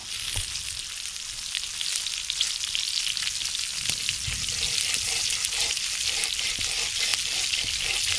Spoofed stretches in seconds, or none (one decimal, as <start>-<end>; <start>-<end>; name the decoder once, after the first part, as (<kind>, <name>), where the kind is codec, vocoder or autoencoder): none